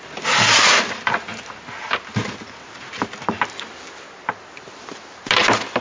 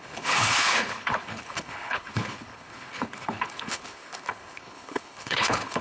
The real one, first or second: first